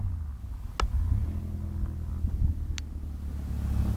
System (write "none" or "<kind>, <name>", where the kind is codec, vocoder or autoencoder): none